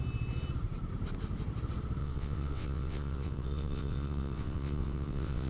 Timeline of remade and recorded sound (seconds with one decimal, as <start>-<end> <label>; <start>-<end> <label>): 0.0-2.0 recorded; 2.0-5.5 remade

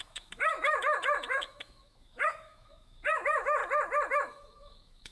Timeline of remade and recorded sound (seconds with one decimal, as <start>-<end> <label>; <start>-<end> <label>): 0.0-3.6 remade; 3.6-4.1 recorded; 4.1-5.1 remade

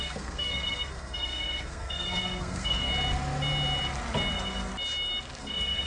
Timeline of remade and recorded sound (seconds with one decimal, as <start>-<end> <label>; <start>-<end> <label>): 0.0-2.9 remade; 2.9-4.3 recorded; 4.3-4.7 remade; 4.7-5.4 recorded; 5.4-5.9 remade

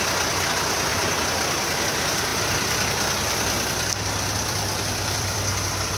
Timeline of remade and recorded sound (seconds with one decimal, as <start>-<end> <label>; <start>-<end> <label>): 0.0-0.9 recorded; 0.9-1.8 remade; 1.8-2.3 recorded; 2.3-6.0 remade

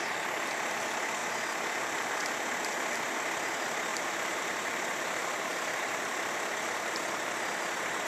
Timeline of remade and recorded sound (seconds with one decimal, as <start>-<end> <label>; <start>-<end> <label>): 0.0-1.2 recorded; 1.2-2.1 remade; 2.1-3.9 recorded; 3.9-5.8 remade; 5.8-8.1 recorded